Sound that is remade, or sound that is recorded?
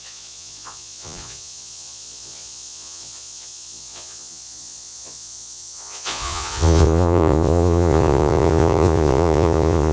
remade